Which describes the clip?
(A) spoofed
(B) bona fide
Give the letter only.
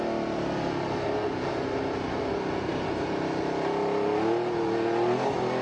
B